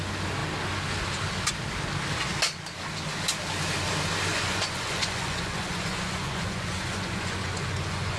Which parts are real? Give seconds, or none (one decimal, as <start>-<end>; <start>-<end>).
0.0-4.3